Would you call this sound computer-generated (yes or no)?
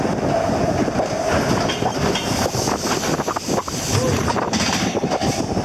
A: no